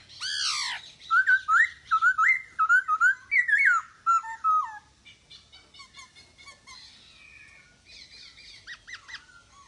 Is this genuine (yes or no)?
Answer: yes